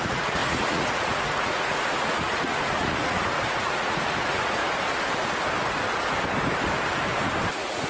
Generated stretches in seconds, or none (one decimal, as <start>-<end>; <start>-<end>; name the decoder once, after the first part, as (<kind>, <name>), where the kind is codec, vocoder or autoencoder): 0.0-4.6 (vocoder, Vocos); 7.5-7.9